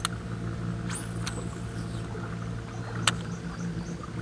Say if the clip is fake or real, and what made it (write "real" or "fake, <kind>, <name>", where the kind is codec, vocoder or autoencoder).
real